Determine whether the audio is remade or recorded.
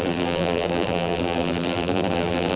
remade